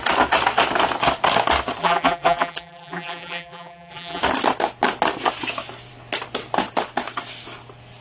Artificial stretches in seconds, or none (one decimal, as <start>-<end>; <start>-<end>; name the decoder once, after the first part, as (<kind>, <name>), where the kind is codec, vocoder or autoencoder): 1.8-4.2 (vocoder, BigVGAN v2)